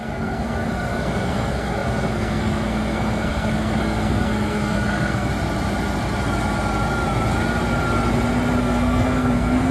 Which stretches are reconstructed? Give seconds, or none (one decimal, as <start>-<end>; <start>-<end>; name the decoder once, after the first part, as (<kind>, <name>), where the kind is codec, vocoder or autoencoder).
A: 0.0-5.3 (codec, SNAC); 8.6-9.7

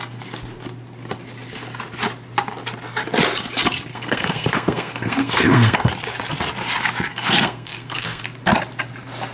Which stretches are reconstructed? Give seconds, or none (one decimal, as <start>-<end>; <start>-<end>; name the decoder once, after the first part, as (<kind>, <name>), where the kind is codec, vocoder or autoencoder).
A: 3.9-5.9 (codec, SNAC); 7.1-8.2

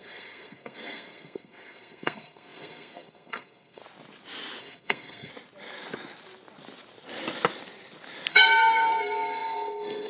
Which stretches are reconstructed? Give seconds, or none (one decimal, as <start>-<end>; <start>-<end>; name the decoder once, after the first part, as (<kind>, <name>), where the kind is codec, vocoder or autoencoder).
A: 0.0-3.8 (codec, SNAC); 4.6-5.3; 8.3-10.1

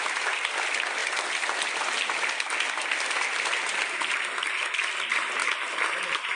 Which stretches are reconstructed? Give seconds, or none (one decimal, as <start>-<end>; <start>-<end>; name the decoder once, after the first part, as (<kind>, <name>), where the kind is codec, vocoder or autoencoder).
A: none

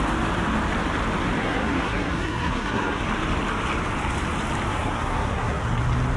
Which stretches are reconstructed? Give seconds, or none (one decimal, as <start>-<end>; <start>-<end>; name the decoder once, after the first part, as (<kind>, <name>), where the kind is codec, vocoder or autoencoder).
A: 1.4-3.0 (codec, SNAC); 4.7-5.6

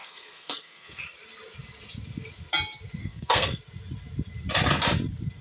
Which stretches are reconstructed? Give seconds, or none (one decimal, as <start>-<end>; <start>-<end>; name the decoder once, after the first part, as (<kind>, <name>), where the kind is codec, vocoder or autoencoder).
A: 0.0-1.0 (codec, SNAC); 3.0-3.6

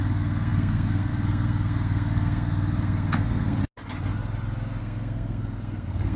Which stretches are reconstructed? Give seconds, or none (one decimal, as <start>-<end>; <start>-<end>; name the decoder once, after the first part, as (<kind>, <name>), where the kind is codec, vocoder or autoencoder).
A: 0.0-3.6 (codec, SNAC); 4.8-6.2

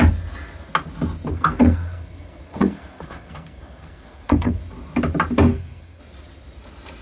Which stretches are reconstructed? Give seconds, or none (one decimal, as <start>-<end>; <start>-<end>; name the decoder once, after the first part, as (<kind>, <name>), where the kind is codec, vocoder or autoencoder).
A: 1.3-4.6 (codec, SNAC); 5.5-6.0